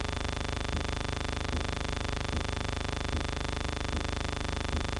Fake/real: real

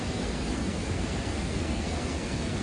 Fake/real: fake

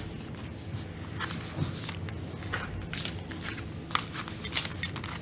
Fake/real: real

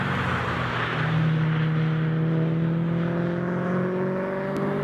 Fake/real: real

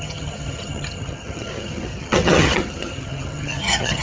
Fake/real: fake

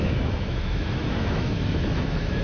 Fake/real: fake